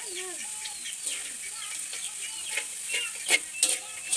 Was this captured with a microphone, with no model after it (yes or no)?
yes